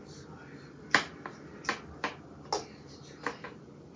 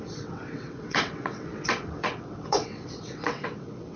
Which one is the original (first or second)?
first